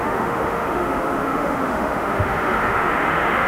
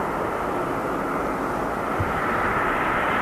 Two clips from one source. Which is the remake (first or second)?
first